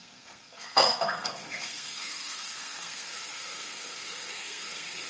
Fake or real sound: fake